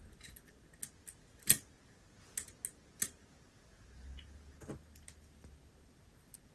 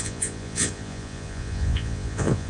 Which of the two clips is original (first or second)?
first